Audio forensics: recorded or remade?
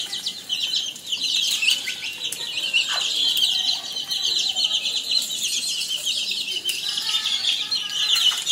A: recorded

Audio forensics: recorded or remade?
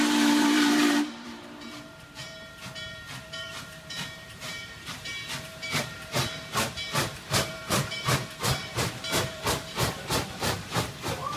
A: remade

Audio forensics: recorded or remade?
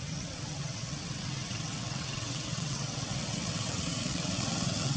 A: remade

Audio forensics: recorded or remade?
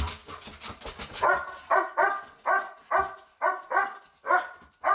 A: recorded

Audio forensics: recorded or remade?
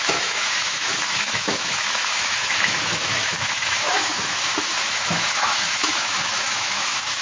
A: remade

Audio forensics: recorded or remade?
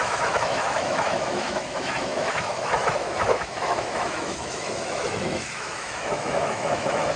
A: remade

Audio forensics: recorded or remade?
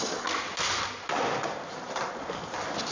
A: remade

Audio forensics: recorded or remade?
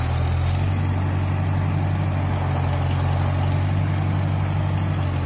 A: recorded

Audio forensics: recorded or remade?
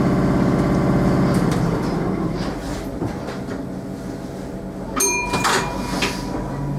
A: recorded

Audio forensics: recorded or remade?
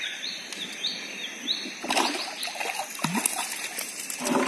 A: recorded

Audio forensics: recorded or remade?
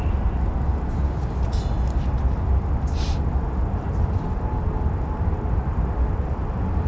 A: recorded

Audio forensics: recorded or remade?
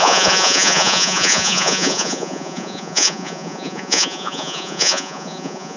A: remade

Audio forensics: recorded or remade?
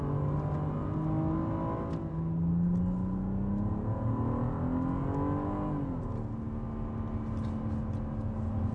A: recorded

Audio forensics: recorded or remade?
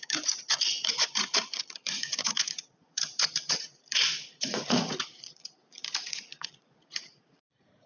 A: remade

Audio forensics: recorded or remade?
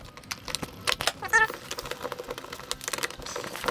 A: recorded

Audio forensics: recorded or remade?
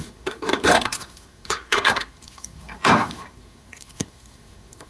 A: remade